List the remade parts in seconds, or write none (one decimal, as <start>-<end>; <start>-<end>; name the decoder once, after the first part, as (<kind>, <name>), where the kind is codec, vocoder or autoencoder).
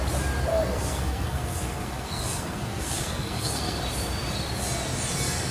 0.5-3.8 (codec, SNAC)